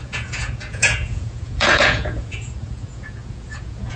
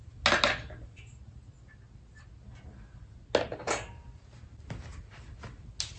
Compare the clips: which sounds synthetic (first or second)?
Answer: first